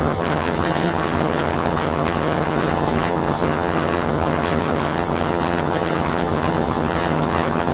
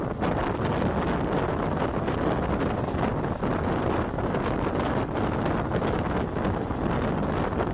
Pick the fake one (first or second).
first